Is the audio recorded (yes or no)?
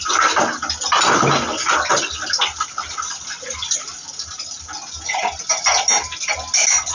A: yes